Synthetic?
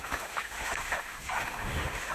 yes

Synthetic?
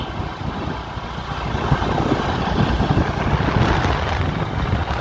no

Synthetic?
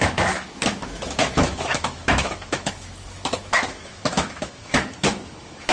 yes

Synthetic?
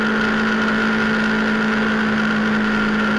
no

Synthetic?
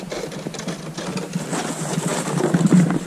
no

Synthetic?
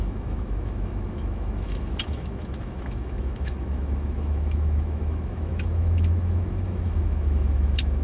yes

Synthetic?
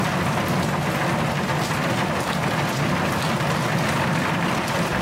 no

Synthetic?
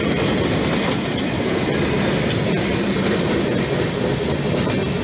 no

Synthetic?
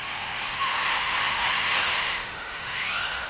yes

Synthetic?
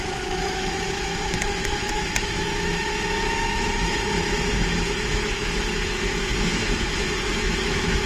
yes